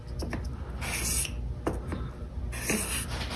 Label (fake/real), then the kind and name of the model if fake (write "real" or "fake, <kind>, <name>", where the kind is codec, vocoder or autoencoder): fake, vocoder, BigVGAN v2